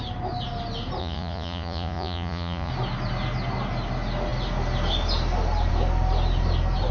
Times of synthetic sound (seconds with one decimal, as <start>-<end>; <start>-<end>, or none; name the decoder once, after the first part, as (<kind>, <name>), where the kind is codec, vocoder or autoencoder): 1.0-2.7 (vocoder, Vocos)